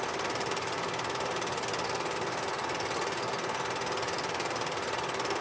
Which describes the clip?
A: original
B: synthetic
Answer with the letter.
A